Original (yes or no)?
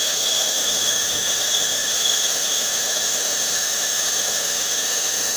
no